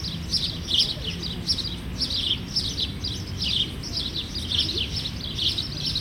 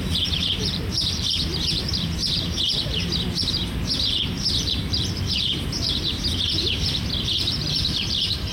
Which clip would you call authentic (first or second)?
first